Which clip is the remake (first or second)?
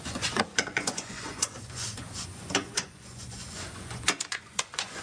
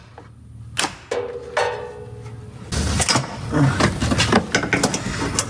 first